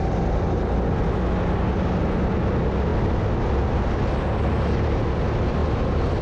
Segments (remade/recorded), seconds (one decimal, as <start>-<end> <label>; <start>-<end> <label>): 0.0-6.2 recorded